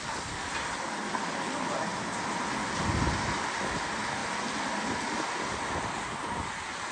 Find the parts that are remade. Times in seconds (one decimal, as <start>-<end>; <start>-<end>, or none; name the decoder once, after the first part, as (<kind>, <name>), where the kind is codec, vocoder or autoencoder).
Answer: none